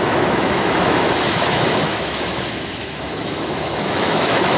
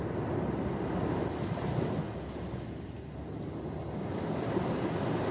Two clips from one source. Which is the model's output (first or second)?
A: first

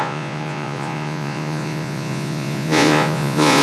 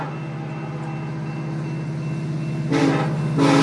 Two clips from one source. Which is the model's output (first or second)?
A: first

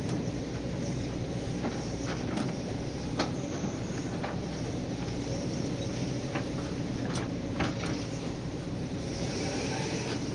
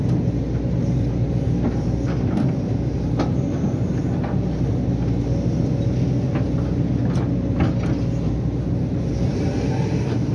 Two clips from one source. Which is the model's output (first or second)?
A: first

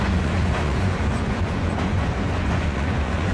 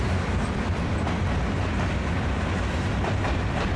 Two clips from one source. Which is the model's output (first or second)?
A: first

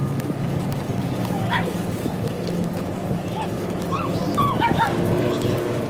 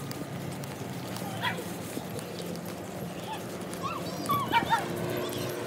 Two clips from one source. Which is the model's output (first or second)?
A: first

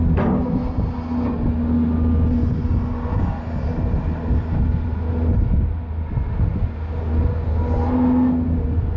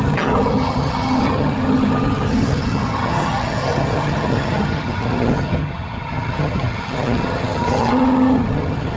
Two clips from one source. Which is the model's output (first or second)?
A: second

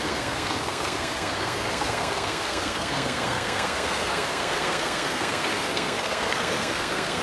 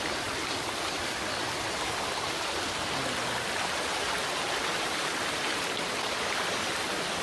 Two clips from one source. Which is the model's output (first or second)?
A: first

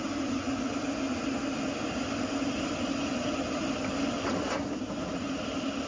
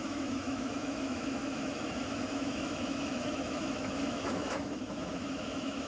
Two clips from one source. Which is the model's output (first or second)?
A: second